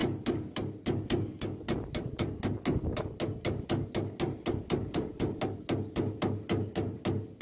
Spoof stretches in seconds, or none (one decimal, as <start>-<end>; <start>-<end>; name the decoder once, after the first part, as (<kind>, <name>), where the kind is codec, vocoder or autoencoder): none